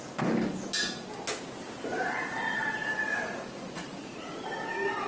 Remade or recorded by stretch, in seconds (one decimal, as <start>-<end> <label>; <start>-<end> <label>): 0.0-1.9 recorded; 1.9-4.6 remade; 4.6-5.1 recorded